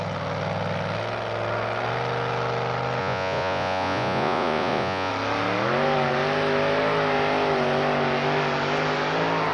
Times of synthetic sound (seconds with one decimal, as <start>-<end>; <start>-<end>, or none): 3.0-5.1